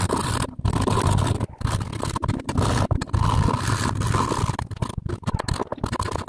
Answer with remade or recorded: recorded